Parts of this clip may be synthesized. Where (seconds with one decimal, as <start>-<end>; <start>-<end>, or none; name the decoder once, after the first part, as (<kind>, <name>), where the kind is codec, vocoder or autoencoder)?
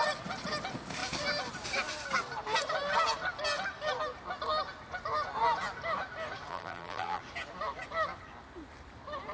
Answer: 6.5-7.2 (vocoder, BigVGAN v2)